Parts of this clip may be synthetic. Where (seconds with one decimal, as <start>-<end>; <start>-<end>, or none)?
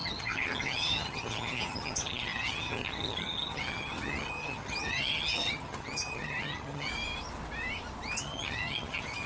0.0-6.9; 8.2-9.3